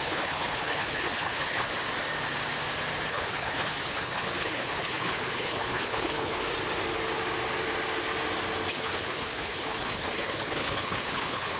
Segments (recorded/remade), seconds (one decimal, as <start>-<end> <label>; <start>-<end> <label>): 0.0-1.7 remade; 1.7-3.1 recorded; 3.1-6.4 remade; 6.4-8.7 recorded; 8.7-11.6 remade

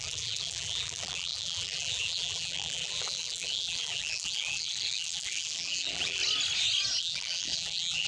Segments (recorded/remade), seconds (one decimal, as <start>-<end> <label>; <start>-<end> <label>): 0.0-6.2 remade; 6.2-7.0 recorded; 7.0-8.1 remade

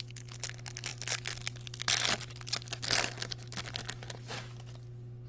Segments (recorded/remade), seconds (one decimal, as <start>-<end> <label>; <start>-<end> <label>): 0.0-5.3 recorded

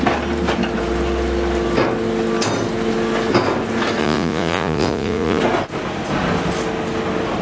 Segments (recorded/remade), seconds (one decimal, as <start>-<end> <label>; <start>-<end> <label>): 0.0-4.0 recorded; 4.0-5.4 remade; 5.4-7.4 recorded

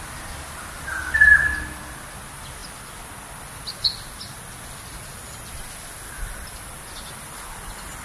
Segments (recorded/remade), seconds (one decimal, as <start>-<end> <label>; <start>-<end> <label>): 0.0-8.0 recorded

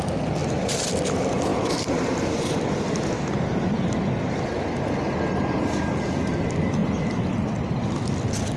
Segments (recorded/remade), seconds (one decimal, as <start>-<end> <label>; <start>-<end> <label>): 0.0-0.4 recorded; 0.4-0.9 remade; 0.9-1.5 recorded; 1.5-3.0 remade; 3.0-8.6 recorded